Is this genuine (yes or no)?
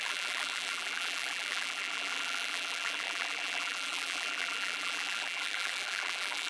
no